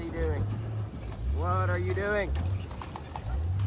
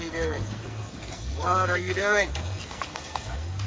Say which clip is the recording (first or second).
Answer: first